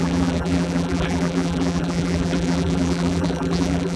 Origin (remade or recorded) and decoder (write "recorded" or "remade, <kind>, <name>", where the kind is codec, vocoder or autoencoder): remade, vocoder, BigVGAN v2